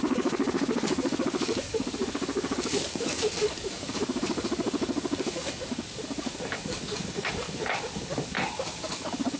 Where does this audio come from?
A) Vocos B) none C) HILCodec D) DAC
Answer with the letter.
D